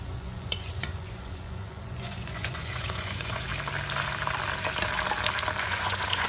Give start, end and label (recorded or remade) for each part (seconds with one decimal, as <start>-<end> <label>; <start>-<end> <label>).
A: 0.0-3.5 remade; 3.5-5.6 recorded; 5.6-6.3 remade